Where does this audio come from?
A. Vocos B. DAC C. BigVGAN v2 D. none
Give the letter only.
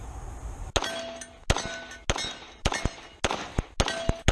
D